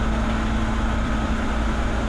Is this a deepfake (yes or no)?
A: no